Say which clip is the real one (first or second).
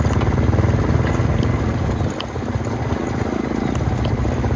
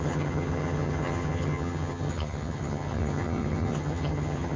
first